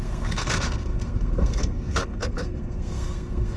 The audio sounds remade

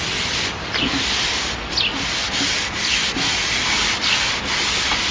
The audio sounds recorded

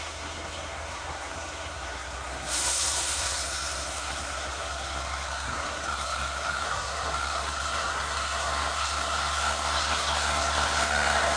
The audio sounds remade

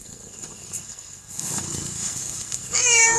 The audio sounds remade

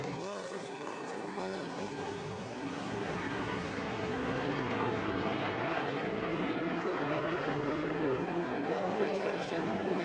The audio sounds remade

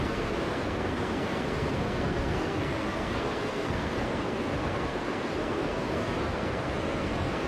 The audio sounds remade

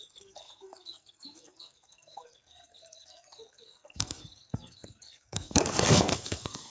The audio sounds remade